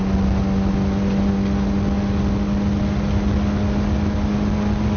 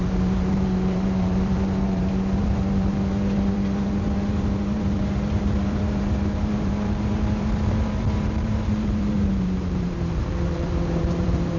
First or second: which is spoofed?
second